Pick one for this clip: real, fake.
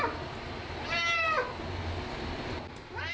real